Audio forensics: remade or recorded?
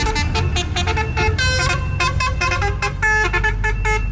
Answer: recorded